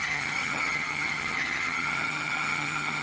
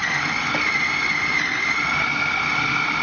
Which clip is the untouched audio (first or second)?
second